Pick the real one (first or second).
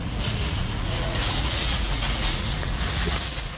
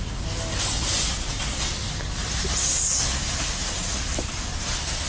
second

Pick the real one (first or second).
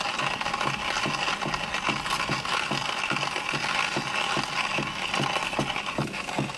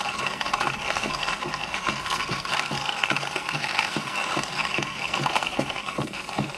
first